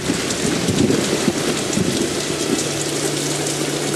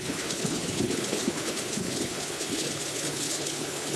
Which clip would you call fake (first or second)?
second